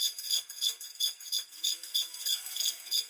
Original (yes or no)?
no